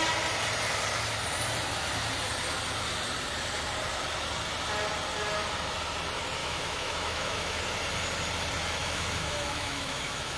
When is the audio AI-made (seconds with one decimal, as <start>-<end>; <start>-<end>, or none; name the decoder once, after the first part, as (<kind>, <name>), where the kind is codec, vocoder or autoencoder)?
6.4-7.6 (autoencoder, DAC-VAE); 8.8-10.4